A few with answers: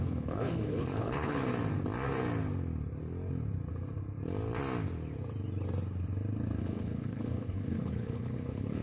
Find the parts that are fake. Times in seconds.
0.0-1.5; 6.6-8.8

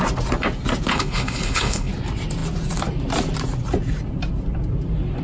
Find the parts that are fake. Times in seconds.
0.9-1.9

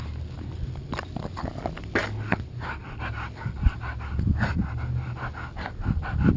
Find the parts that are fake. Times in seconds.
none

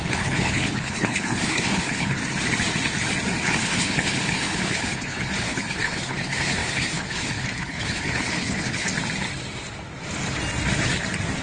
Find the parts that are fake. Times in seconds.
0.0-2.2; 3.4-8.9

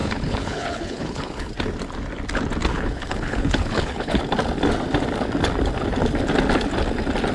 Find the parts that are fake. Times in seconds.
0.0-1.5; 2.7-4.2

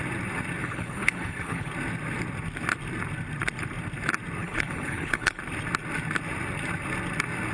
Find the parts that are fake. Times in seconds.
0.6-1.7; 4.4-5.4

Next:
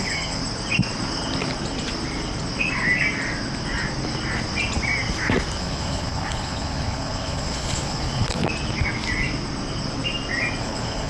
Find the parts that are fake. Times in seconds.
0.0-0.4; 5.6-8.4; 10.6-11.1

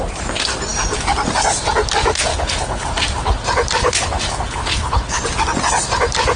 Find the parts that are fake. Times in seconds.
2.3-2.8; 3.8-5.2